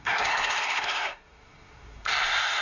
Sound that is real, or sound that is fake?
fake